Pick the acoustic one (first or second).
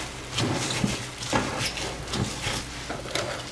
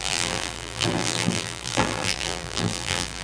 first